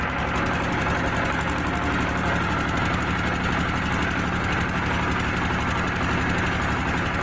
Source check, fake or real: real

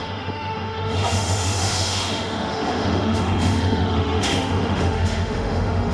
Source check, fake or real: fake